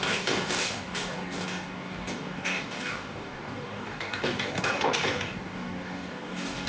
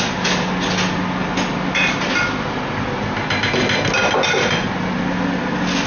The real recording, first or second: second